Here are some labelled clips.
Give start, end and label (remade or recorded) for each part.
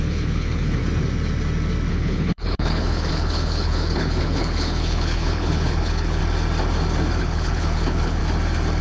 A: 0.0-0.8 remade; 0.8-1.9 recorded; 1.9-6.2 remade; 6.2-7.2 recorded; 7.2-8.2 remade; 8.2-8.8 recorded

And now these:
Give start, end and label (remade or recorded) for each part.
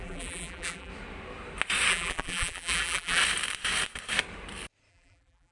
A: 0.0-0.9 remade; 0.9-1.9 recorded; 1.9-3.2 remade; 3.2-4.9 recorded; 4.9-5.5 remade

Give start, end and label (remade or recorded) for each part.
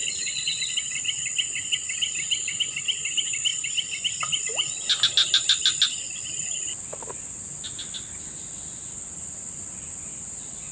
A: 0.0-0.6 remade; 0.6-10.7 recorded